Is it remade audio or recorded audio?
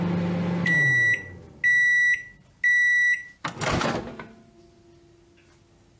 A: recorded